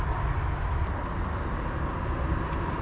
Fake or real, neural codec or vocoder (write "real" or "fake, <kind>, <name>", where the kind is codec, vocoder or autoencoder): real